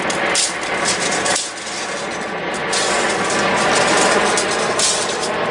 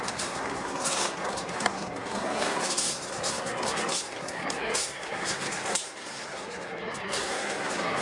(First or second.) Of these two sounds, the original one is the first